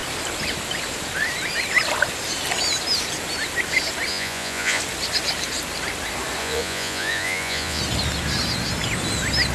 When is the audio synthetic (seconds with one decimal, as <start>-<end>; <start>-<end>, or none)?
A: 4.1-4.8; 6.4-7.8